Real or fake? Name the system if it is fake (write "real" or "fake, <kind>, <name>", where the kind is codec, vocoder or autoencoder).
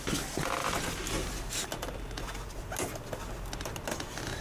real